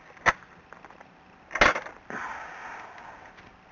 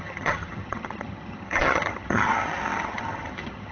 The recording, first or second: first